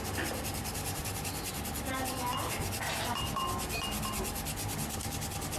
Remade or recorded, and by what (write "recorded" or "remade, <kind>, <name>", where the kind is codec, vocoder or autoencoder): recorded